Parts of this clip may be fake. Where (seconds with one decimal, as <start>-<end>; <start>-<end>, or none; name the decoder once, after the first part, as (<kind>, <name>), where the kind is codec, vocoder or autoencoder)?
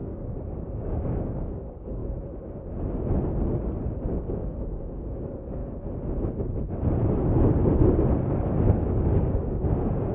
0.0-2.0 (codec, DAC); 4.2-5.6; 8.6-10.1